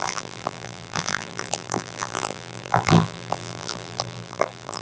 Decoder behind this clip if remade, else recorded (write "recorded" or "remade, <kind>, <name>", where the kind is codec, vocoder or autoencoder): remade, vocoder, BigVGAN v2